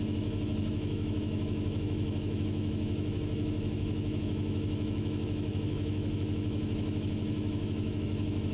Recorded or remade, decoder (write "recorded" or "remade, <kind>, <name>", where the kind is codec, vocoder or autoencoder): remade, autoencoder, DAC-VAE